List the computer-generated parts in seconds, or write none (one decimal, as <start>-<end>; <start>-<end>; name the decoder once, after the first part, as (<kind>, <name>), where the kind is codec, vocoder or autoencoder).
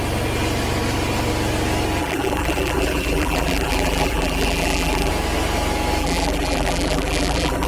2.0-5.1 (vocoder, BigVGAN v2); 6.0-7.7